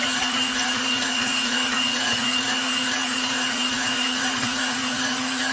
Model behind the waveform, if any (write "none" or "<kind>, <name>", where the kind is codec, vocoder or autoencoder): vocoder, Vocos